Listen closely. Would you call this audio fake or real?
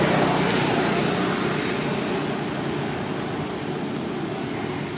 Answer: real